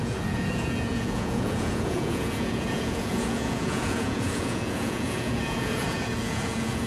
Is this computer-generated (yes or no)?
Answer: yes